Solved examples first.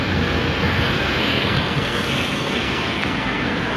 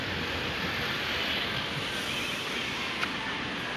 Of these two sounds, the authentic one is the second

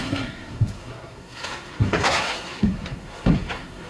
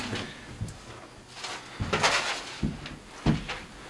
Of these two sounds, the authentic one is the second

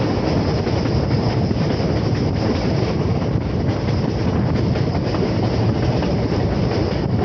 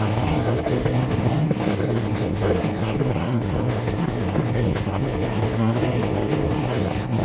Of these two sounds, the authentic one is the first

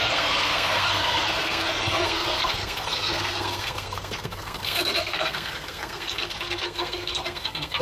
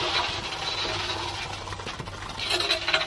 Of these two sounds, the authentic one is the second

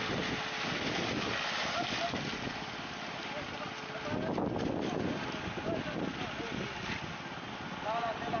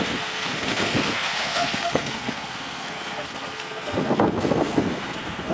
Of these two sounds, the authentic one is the first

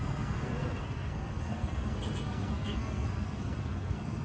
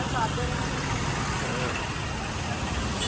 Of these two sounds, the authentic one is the second